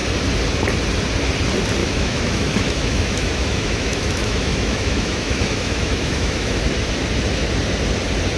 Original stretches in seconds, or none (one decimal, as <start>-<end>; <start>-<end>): 0.0-1.8; 6.6-8.4